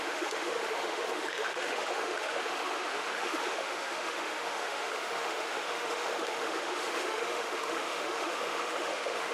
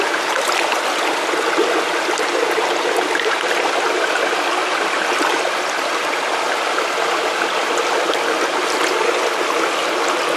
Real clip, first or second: second